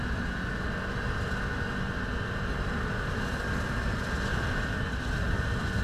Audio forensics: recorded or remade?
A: recorded